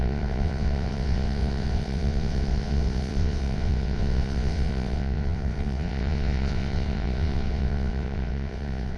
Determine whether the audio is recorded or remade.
remade